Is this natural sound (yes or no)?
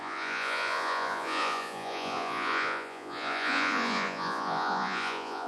no